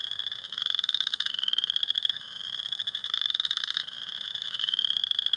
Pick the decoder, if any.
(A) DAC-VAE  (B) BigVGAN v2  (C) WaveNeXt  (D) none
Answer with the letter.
A